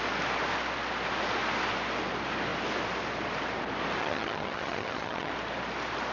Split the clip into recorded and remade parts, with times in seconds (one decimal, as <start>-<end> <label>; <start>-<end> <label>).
0.0-4.0 recorded; 4.0-5.3 remade; 5.3-6.1 recorded